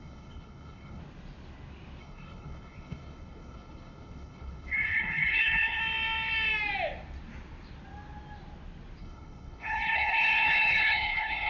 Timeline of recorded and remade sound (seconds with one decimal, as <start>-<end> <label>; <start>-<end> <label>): 0.0-1.0 remade; 1.0-2.0 recorded; 2.0-5.8 remade; 5.8-9.0 recorded; 9.0-11.5 remade